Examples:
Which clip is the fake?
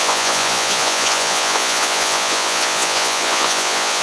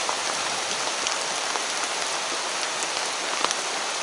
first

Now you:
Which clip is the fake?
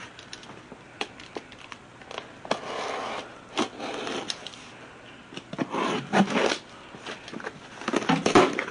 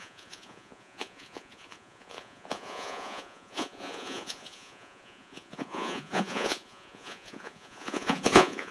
second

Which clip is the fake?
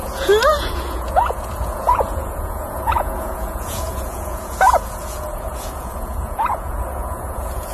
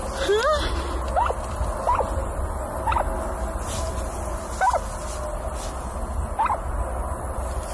first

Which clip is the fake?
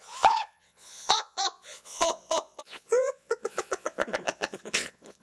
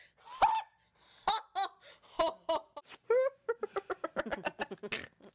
first